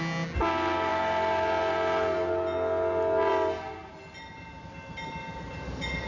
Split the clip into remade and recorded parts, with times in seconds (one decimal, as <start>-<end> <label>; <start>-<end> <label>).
0.0-6.1 recorded